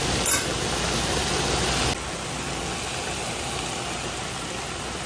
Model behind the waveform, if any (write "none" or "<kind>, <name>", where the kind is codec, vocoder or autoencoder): none